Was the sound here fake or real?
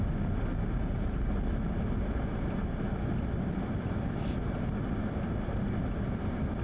real